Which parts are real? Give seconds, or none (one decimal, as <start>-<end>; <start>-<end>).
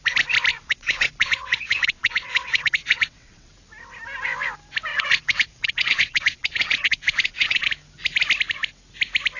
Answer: 0.0-0.5; 3.5-4.9; 7.7-9.4